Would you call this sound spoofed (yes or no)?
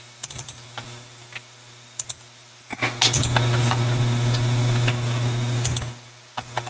no